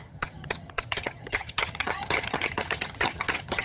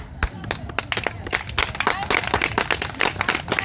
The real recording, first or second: second